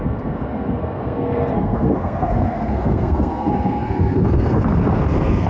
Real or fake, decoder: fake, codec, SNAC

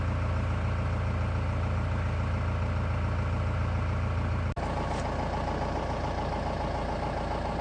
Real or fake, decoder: real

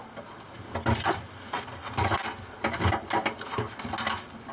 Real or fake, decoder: real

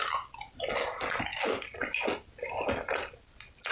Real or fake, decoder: real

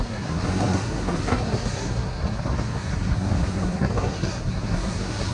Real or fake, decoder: fake, codec, SNAC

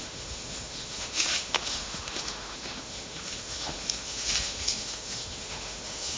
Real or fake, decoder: fake, autoencoder, DAC-VAE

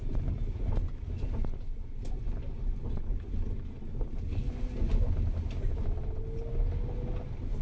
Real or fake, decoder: real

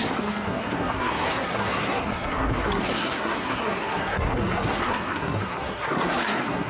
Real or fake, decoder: fake, codec, SNAC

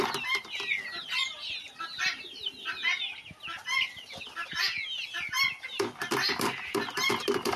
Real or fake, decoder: real